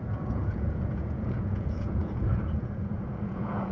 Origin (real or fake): fake